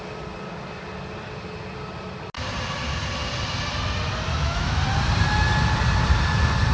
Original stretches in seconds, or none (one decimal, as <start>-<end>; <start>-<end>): 0.0-4.3; 4.8-6.7